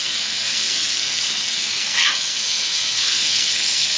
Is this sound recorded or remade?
remade